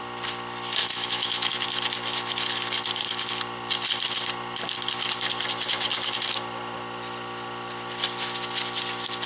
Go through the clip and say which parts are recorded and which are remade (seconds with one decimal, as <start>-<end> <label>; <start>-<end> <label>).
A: 0.0-0.8 recorded; 0.8-1.5 remade; 1.5-9.3 recorded